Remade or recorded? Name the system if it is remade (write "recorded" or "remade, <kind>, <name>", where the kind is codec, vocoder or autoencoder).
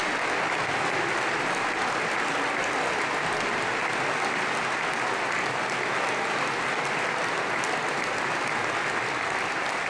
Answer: recorded